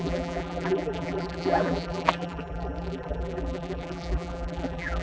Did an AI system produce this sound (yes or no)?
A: yes